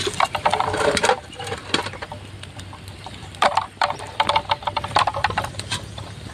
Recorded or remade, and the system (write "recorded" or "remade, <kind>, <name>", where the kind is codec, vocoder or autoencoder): remade, vocoder, BigVGAN v2